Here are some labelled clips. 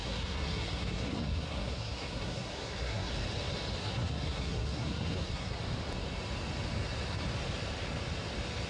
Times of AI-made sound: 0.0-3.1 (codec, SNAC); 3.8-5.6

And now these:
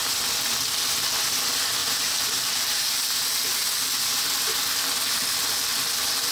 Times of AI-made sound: 1.8-2.6 (vocoder, BigVGAN v2)

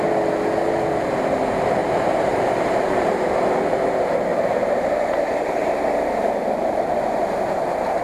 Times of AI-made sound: 1.8-3.2 (vocoder, BigVGAN v2); 4.3-7.6

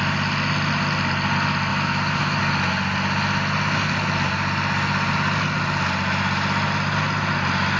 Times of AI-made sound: 1.7-2.4 (autoencoder, DAC-VAE)

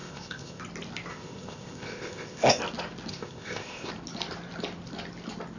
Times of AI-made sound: 0.0-0.6 (codec, ZipCodec); 1.1-2.6; 3.1-3.9

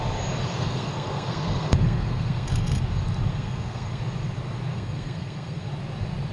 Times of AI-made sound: 0.5-2.8 (codec, SNAC); 3.3-4.0; 4.7-5.7

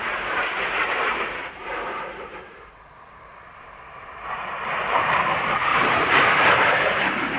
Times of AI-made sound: 0.0-7.4 (vocoder, BigVGAN v2)

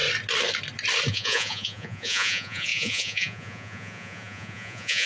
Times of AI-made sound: 1.1-5.1 (vocoder, Vocos)